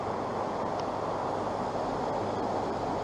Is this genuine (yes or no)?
yes